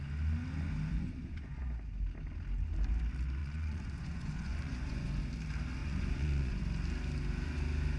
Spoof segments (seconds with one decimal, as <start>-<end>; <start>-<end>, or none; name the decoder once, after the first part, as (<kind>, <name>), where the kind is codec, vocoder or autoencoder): 0.9-1.6 (vocoder, Vocos); 3.4-5.2; 5.8-6.6